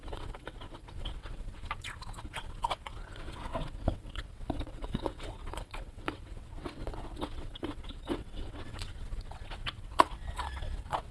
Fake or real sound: fake